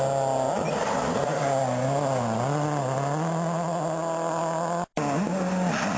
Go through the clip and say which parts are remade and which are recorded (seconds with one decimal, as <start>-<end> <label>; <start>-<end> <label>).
0.0-0.8 recorded; 0.8-1.4 remade; 1.4-6.0 recorded